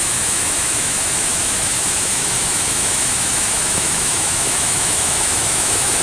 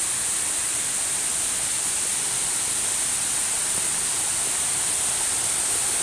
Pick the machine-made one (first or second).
first